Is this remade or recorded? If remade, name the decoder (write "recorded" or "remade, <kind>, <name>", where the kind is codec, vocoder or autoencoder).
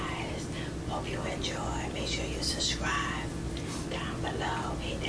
recorded